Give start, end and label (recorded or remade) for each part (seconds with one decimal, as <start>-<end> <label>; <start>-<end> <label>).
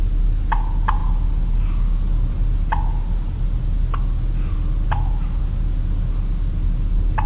0.0-7.3 recorded